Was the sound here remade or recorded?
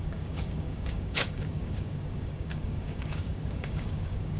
remade